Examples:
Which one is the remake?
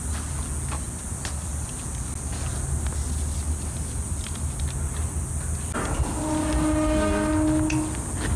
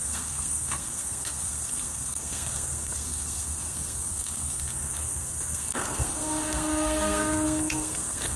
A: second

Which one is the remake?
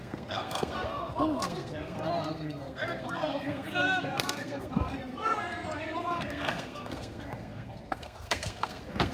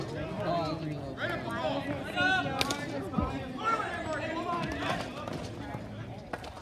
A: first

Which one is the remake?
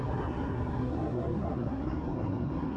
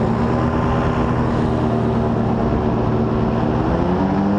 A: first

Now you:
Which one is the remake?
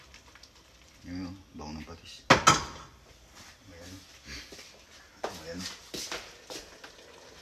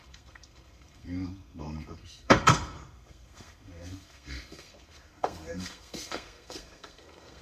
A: second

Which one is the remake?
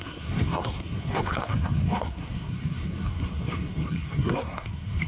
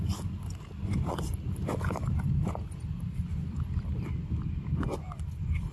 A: first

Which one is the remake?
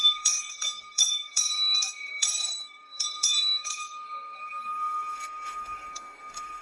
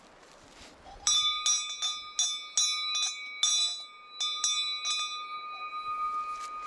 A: first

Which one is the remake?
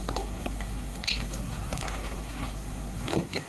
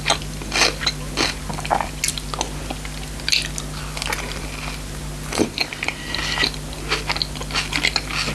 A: first